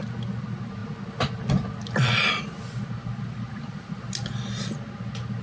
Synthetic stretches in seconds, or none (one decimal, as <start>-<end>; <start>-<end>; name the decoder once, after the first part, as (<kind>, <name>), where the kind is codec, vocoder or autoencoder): none